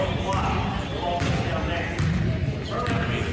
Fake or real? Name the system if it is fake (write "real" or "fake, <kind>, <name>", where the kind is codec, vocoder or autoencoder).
real